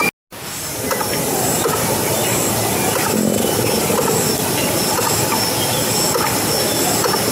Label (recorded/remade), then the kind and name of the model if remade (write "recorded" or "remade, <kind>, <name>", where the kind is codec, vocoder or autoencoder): recorded